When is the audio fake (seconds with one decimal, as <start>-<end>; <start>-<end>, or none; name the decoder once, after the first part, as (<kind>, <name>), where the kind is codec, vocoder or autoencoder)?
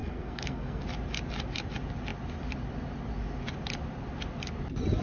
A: 0.0-0.8 (codec, SNAC)